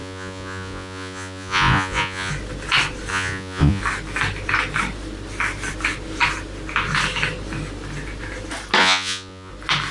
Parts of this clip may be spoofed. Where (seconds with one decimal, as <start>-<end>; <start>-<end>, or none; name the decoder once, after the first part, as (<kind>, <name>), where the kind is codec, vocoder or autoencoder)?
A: 0.0-2.3 (vocoder, Vocos); 3.1-3.8; 8.8-9.5